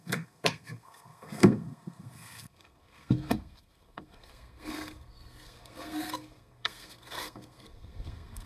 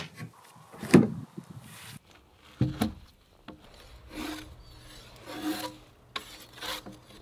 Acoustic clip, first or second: second